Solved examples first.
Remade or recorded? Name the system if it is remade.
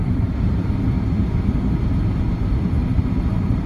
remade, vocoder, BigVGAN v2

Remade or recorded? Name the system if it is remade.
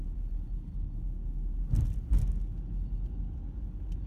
recorded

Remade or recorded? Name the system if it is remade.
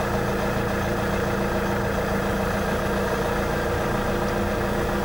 recorded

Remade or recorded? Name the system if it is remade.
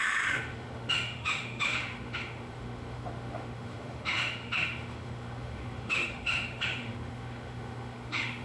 remade, autoencoder, DAC-VAE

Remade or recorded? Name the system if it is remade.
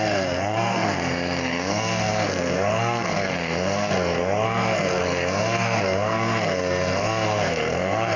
remade, codec, SNAC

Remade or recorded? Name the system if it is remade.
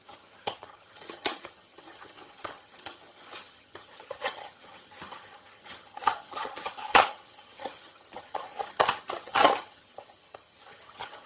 remade, vocoder, HiFi-GAN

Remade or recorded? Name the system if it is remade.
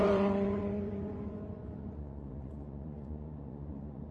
remade, vocoder, Vocos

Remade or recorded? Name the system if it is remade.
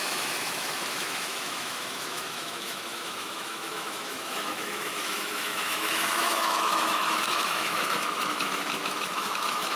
remade, autoencoder, DAC-VAE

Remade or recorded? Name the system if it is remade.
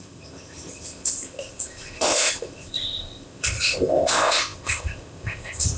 remade, codec, ZipCodec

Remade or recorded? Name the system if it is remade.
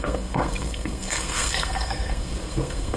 remade, codec, SNAC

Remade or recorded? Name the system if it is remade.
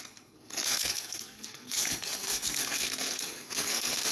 remade, codec, SNAC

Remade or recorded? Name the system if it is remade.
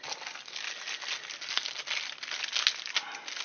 recorded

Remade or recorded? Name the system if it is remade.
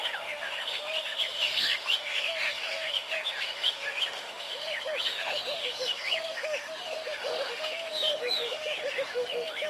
remade, autoencoder, DAC-VAE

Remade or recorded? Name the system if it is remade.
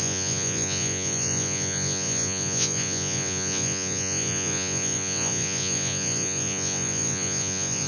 remade, vocoder, Vocos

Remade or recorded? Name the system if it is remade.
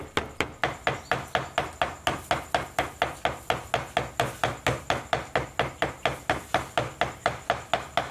recorded